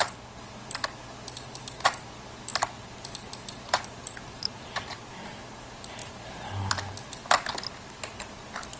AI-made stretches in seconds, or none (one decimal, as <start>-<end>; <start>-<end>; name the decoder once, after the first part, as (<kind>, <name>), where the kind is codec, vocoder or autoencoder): 2.5-5.1 (vocoder, BigVGAN v2)